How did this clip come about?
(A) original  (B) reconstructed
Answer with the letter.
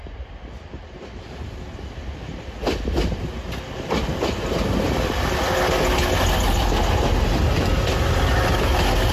A